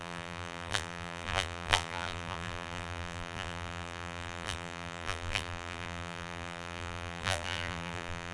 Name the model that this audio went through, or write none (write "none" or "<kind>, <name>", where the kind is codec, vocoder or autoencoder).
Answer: vocoder, BigVGAN v2